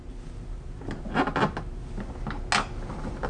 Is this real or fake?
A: real